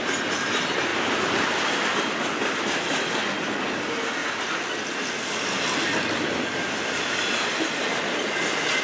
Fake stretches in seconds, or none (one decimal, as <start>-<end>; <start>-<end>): 0.9-2.2